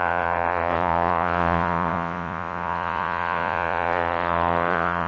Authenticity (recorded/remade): remade